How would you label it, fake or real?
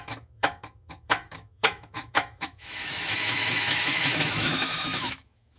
fake